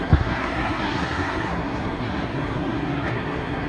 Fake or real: fake